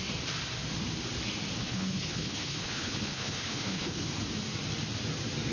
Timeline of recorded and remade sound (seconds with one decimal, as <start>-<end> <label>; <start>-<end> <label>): 0.0-1.6 recorded; 1.6-4.1 remade; 4.1-5.5 recorded